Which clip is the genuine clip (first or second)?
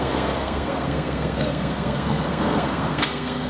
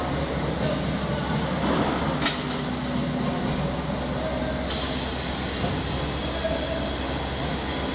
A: second